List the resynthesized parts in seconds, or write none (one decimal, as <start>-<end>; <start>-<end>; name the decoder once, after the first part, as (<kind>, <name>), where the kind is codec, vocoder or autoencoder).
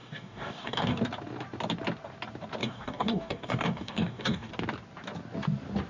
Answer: 0.0-1.0 (codec, DAC); 2.6-4.5